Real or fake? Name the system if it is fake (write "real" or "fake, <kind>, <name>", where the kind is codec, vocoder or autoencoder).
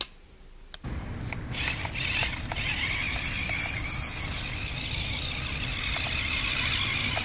real